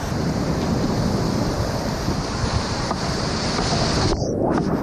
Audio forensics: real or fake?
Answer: fake